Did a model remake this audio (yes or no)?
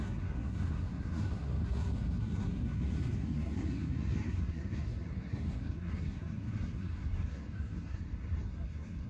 yes